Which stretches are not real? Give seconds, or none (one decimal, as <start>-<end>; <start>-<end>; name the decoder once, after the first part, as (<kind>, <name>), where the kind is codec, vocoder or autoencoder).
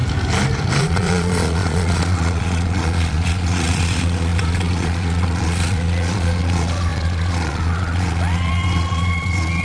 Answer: 0.8-9.6 (vocoder, Vocos)